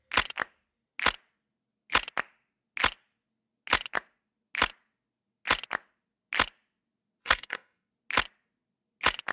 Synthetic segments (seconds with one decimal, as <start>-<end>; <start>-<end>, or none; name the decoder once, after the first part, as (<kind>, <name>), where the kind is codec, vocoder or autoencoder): 7.2-7.9 (codec, SNAC)